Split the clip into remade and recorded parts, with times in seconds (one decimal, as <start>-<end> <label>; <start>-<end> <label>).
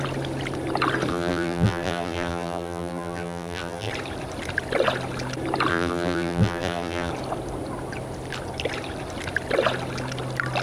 0.0-1.1 recorded; 1.1-3.9 remade; 3.9-5.7 recorded; 5.7-7.1 remade; 7.1-10.6 recorded